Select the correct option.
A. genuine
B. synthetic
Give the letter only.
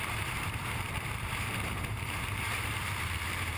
B